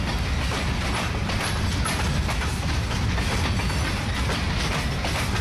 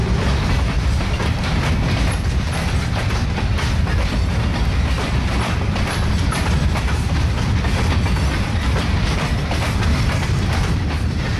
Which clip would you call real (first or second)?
first